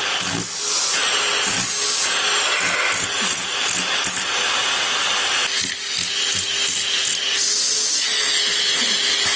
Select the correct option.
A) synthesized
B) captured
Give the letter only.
B